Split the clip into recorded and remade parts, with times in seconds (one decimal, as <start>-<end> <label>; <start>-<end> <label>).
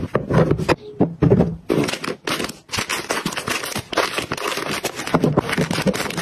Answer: 0.0-6.2 recorded